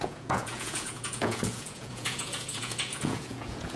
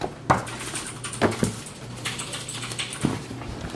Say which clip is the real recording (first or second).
second